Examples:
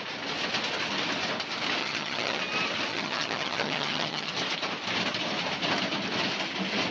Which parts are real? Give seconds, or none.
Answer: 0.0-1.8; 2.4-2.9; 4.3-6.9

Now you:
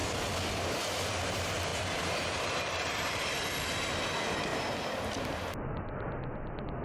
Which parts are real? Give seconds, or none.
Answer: 0.0-1.7; 3.3-4.5; 5.0-6.8

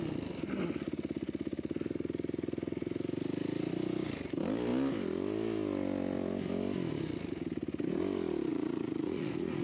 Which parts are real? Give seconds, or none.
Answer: 0.0-8.5